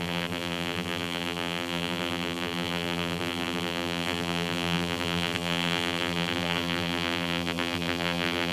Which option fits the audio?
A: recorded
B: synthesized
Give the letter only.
B